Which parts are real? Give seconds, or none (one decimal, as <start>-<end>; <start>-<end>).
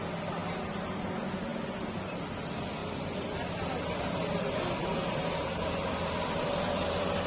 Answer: 0.0-2.8